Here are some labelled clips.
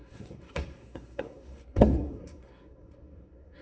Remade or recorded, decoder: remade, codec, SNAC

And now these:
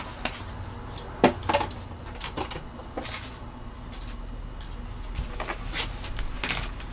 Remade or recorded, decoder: recorded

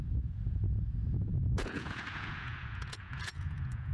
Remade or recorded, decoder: remade, vocoder, Vocos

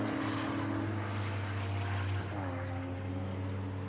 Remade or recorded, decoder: recorded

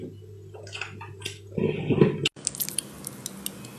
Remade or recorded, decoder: recorded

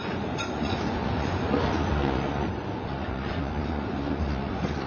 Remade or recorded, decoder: remade, vocoder, Vocos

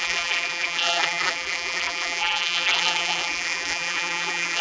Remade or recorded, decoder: remade, vocoder, BigVGAN v2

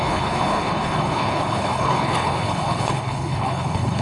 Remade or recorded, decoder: remade, codec, HILCodec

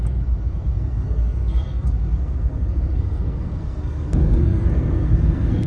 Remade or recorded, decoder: remade, codec, SNAC